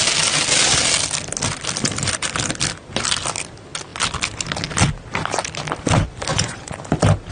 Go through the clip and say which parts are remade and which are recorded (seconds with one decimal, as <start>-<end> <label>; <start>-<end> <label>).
0.0-6.3 recorded; 6.3-6.8 remade; 6.8-7.3 recorded